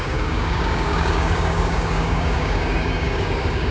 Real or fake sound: fake